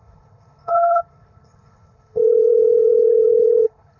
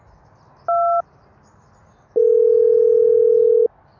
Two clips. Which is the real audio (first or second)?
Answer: second